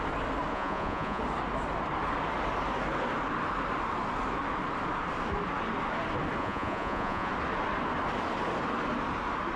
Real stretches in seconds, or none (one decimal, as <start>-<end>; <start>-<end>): 0.0-0.5; 1.2-6.4; 7.3-9.6